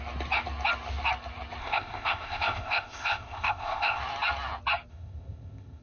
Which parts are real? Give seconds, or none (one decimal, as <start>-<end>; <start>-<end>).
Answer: 0.0-1.6; 4.0-4.9